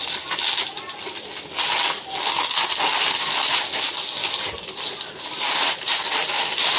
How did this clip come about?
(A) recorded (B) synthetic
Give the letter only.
A